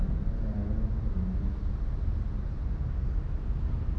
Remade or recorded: recorded